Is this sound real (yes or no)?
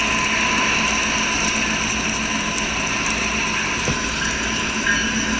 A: yes